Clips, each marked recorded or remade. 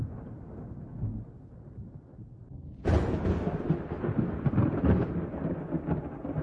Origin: recorded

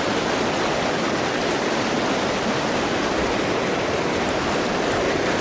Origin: recorded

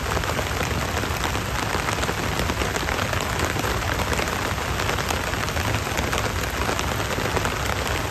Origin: recorded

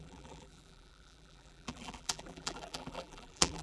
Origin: remade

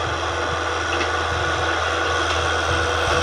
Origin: recorded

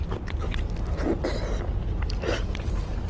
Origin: recorded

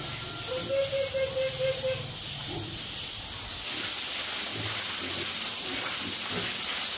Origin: recorded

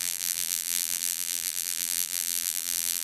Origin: remade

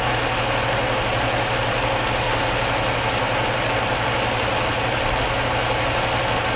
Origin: recorded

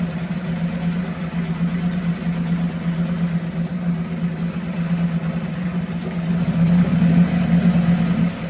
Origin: recorded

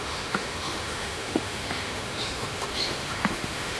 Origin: remade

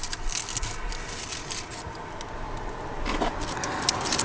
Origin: recorded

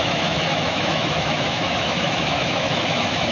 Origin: remade